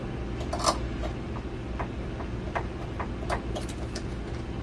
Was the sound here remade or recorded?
recorded